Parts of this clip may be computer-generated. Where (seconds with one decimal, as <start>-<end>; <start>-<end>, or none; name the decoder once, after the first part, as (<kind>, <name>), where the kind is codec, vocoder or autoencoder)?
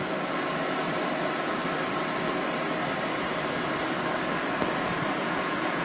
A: 1.2-1.6 (vocoder, Vocos); 5.1-5.8